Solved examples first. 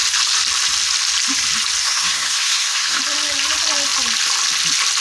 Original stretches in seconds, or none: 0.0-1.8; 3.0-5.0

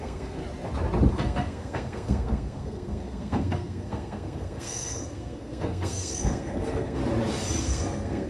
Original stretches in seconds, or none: 0.4-1.1; 7.0-7.6

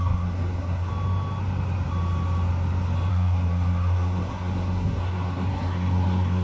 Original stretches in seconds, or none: 0.9-3.1

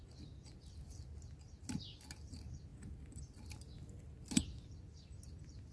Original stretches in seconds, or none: 0.0-5.7

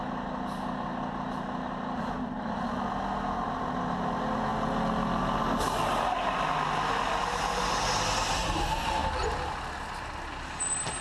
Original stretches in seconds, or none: 0.0-11.0

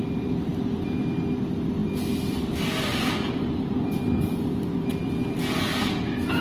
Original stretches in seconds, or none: 0.0-6.4

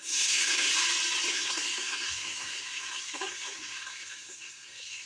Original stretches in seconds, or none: 0.7-1.3